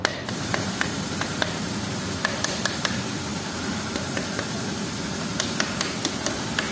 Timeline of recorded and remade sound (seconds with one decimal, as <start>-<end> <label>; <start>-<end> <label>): 0.0-6.7 recorded